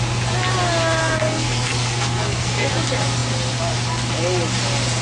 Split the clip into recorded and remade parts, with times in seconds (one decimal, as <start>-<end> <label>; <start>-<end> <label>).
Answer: 0.0-1.0 recorded; 1.0-2.7 remade; 2.7-5.0 recorded